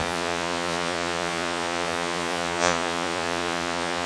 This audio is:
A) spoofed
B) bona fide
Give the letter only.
A